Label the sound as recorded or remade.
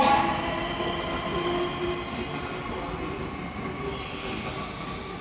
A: recorded